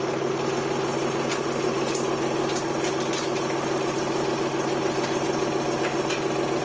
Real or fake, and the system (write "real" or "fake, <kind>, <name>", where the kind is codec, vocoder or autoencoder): real